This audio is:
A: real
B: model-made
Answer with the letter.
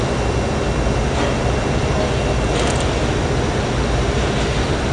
A